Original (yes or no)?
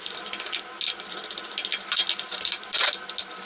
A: yes